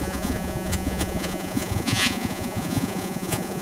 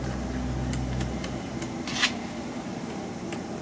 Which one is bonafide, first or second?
second